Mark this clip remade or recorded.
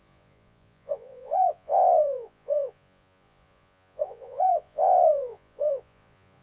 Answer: remade